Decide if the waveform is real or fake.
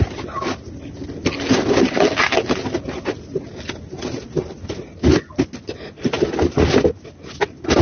real